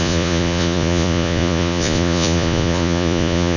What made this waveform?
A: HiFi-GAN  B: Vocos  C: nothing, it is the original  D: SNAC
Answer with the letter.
B